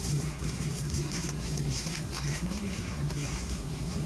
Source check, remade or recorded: remade